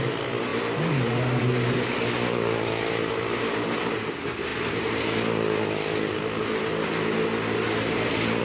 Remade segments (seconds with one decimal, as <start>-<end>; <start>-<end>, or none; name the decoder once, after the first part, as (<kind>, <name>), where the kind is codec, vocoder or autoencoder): none